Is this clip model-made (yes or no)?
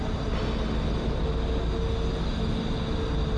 no